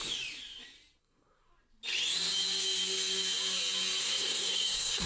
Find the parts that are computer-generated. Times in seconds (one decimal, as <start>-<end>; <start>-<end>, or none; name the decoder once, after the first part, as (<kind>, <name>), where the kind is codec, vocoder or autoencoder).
1.0-1.5 (codec, SNAC); 4.0-5.1